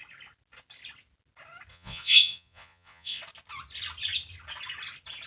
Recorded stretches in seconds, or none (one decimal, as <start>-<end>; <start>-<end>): 0.0-1.7; 3.2-5.3